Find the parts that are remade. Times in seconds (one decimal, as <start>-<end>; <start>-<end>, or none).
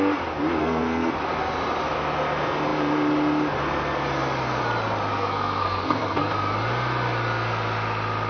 0.6-1.1; 5.1-6.3